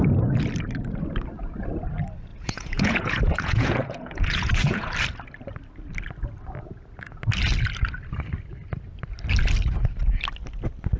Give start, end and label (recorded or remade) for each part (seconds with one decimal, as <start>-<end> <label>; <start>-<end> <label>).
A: 0.0-2.3 recorded; 2.3-4.9 remade; 4.9-11.0 recorded